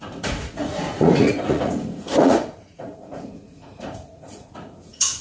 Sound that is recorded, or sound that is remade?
remade